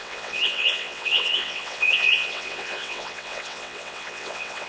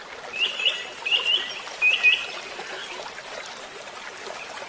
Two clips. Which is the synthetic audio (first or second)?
first